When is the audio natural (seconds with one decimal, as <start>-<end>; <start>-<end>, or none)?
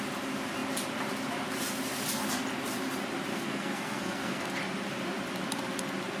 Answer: 0.0-3.3; 4.5-6.2